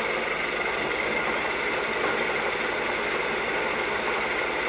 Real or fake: real